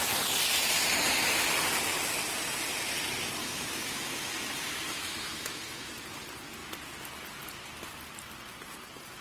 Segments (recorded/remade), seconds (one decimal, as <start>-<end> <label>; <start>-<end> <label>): 0.0-3.4 recorded; 3.4-5.9 remade; 5.9-9.2 recorded